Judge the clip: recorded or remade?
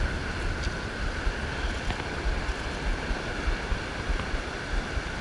recorded